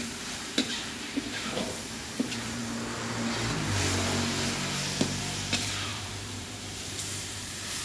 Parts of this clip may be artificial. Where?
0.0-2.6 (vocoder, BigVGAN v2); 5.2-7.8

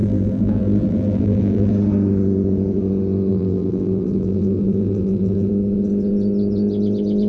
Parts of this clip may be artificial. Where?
0.0-1.7 (vocoder, BigVGAN v2); 3.3-5.5